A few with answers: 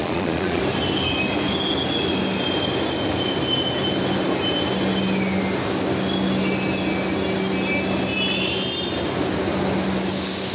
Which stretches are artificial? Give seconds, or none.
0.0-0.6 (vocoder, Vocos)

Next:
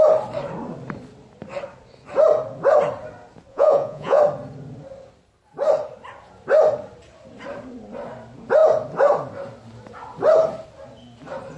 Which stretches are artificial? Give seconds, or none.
3.5-4.2 (vocoder, Vocos)

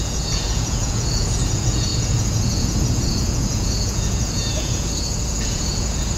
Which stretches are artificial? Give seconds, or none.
0.0-6.2 (vocoder, Vocos)

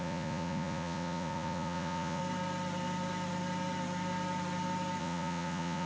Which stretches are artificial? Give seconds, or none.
0.0-2.2 (vocoder, Vocos); 5.0-5.9